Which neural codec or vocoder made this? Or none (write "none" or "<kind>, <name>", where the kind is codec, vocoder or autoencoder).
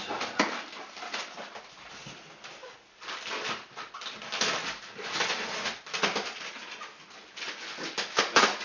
none